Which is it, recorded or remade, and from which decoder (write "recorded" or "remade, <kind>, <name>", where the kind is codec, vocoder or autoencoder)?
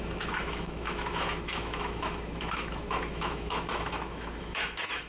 remade, autoencoder, DAC-VAE